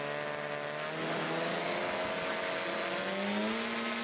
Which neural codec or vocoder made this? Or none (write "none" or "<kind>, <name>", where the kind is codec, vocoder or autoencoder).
none